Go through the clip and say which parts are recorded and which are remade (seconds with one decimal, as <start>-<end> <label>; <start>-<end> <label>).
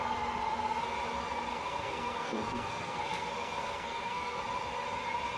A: 0.0-1.5 recorded; 1.5-4.4 remade; 4.4-5.4 recorded